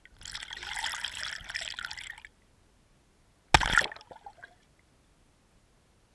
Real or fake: real